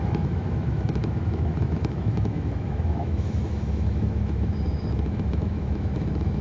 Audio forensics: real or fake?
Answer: fake